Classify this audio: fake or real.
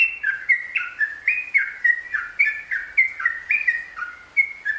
real